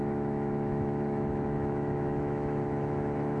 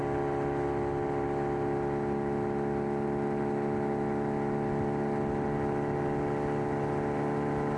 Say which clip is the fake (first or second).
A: first